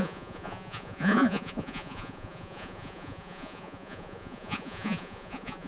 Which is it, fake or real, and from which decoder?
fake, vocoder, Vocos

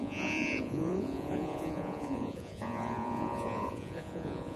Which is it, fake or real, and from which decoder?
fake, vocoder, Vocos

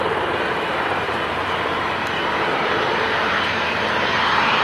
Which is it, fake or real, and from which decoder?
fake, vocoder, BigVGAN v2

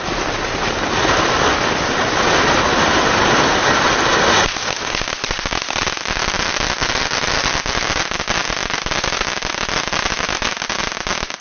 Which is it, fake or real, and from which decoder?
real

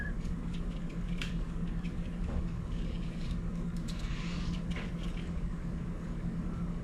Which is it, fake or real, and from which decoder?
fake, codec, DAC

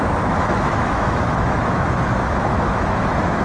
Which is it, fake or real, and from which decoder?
fake, autoencoder, DAC-VAE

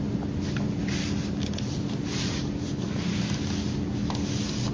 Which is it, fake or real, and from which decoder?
real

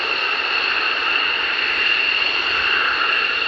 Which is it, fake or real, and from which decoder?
real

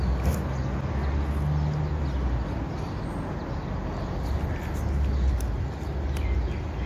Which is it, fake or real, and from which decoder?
real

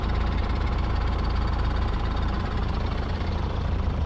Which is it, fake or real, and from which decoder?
fake, vocoder, BigVGAN v2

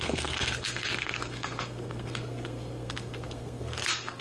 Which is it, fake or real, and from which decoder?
fake, codec, SNAC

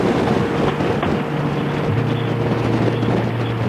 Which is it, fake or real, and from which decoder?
real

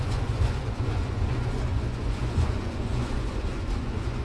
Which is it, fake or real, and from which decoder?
fake, vocoder, Vocos